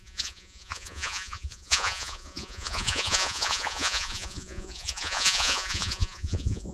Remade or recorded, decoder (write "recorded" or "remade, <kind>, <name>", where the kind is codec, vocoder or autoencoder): remade, vocoder, Vocos